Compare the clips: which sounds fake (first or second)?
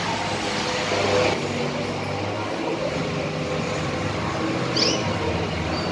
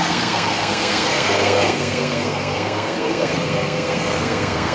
second